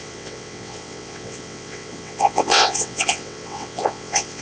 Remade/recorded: remade